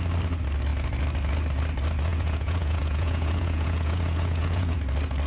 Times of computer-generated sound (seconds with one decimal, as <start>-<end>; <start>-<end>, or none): 2.1-4.8